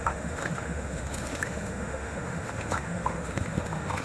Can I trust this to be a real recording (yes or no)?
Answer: no